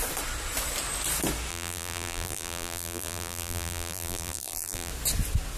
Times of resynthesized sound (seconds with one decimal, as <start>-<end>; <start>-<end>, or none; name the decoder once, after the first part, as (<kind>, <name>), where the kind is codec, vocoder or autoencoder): 1.5-4.9 (vocoder, BigVGAN v2)